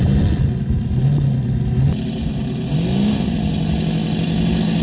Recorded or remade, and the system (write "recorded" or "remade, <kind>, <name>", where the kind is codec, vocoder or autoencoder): recorded